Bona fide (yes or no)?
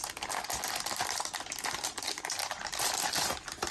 yes